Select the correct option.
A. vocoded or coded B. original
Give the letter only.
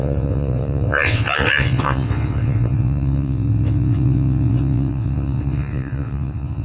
A